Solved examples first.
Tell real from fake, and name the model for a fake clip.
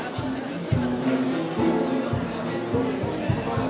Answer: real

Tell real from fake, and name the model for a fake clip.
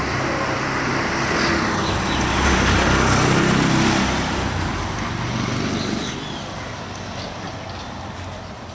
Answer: real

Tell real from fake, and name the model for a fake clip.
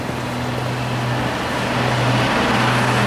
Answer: real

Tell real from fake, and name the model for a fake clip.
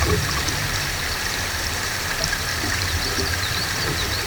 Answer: fake, vocoder, BigVGAN v2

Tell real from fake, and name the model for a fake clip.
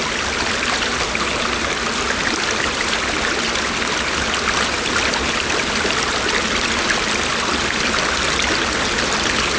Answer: real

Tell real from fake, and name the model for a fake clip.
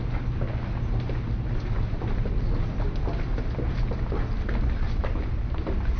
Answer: real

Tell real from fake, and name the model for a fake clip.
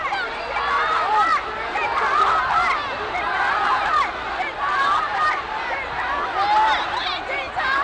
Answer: real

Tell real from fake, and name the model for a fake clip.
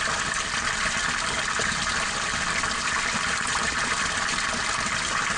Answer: fake, vocoder, BigVGAN v2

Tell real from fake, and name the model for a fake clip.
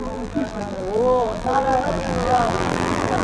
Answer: fake, vocoder, BigVGAN v2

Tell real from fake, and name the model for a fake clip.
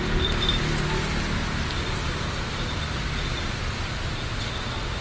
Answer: real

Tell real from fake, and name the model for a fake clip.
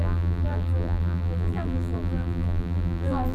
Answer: fake, vocoder, BigVGAN v2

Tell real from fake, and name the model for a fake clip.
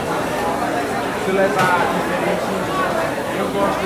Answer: real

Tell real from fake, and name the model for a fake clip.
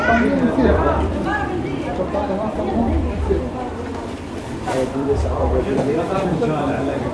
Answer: fake, vocoder, BigVGAN v2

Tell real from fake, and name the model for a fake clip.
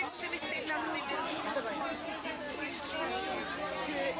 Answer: real